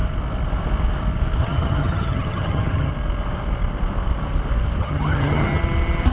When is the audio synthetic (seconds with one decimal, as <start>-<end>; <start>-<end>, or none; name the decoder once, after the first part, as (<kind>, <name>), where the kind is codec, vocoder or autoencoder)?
1.4-2.9 (vocoder, HiFi-GAN); 4.8-5.6